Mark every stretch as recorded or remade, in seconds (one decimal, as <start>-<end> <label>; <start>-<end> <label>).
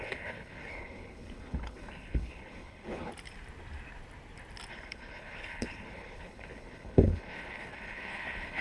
0.0-3.1 remade; 3.1-4.7 recorded; 4.7-8.6 remade